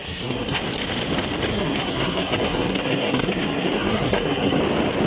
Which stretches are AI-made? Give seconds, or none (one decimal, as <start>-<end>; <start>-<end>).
0.0-0.6; 1.5-4.6